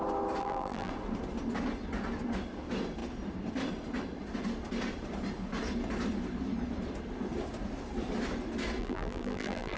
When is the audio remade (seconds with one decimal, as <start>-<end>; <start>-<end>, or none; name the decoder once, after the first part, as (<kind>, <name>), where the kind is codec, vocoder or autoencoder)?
0.4-0.9 (vocoder, BigVGAN v2); 8.8-9.8